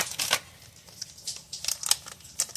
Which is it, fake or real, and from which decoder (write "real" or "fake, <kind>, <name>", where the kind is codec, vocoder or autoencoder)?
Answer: real